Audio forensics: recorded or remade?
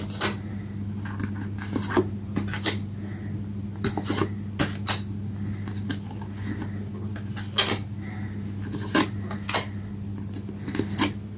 recorded